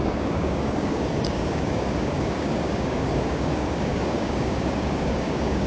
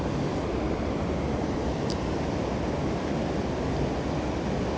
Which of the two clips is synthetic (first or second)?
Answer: first